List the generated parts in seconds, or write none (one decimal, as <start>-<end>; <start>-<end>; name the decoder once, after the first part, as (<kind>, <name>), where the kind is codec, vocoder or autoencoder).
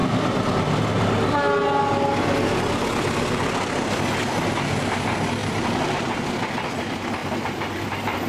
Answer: 5.4-6.3 (vocoder, BigVGAN v2); 7.2-7.9